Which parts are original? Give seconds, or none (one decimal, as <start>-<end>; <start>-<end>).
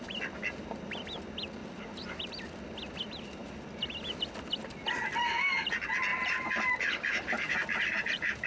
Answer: 0.0-6.1